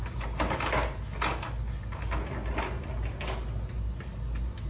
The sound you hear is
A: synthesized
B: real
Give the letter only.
B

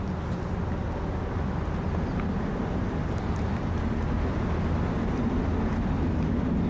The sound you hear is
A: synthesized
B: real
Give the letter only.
B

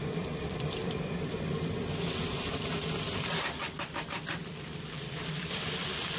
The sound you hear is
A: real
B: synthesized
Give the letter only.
B